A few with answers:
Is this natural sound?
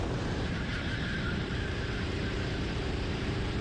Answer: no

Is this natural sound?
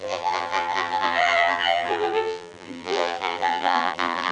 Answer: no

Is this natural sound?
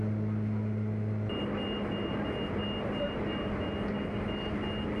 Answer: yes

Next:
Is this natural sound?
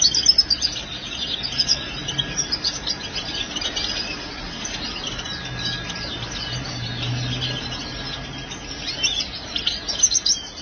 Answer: yes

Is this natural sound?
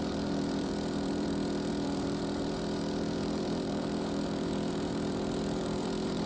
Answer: no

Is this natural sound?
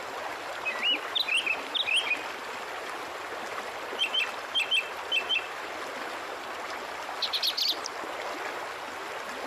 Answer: yes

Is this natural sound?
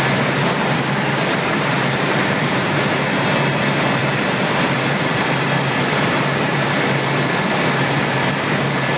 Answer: no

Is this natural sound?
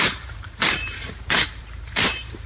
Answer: no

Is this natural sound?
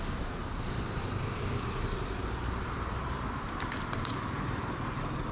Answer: no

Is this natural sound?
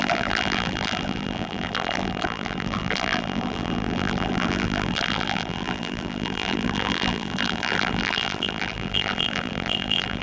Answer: no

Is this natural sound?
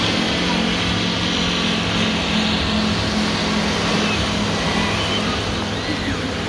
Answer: yes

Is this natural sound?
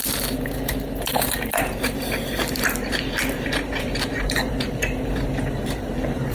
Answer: no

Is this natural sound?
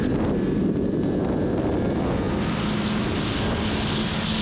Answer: yes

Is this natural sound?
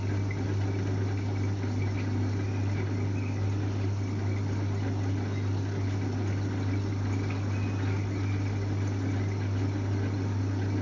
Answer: yes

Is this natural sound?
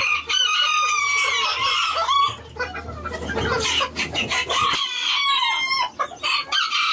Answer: yes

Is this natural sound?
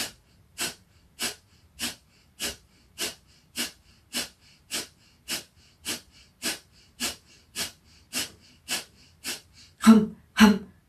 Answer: no